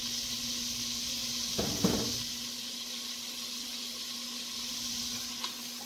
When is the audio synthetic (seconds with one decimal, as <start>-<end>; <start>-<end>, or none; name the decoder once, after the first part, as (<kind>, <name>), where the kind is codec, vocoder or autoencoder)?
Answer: none